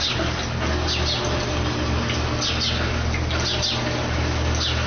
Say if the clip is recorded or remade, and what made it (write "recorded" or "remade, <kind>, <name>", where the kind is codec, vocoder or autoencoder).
recorded